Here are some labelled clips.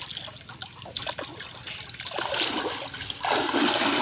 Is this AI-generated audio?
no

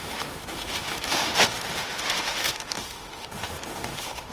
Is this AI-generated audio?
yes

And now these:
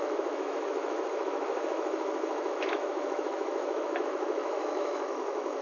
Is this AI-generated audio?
yes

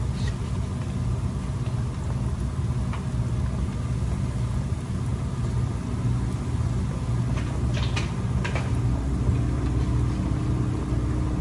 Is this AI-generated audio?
no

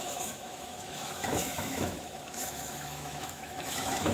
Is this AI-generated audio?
yes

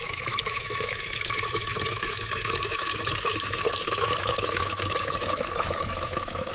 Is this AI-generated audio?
yes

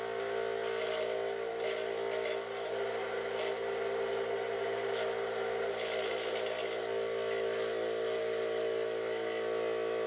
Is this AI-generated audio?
no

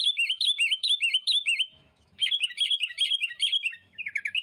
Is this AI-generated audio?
yes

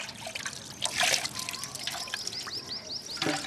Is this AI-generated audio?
no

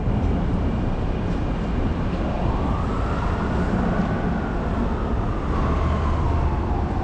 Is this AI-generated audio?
no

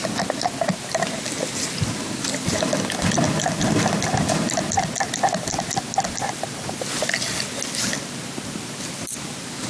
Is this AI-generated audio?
no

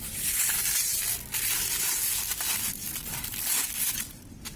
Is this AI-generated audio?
no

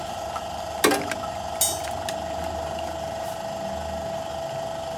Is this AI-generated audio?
no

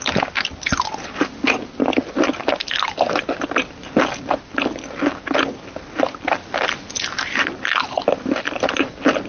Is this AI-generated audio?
no